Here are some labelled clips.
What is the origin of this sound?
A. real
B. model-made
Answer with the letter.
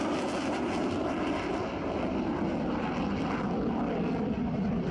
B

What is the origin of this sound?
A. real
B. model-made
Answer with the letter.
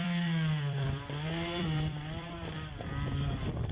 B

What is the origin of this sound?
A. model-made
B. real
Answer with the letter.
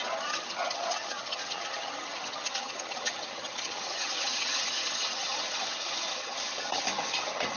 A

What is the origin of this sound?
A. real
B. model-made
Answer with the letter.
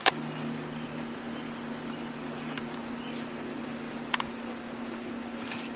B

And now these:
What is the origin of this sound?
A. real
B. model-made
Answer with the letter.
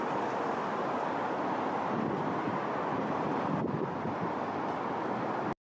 A